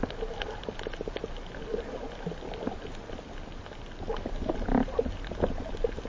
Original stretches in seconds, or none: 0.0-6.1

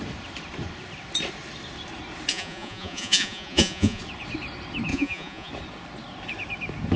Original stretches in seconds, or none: 0.0-2.3; 4.0-4.9; 5.5-7.0

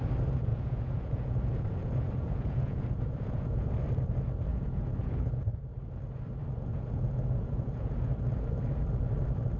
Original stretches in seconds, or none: 0.0-0.5; 3.7-4.5; 5.9-6.7; 8.1-9.6